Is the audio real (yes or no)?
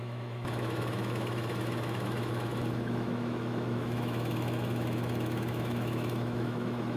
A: no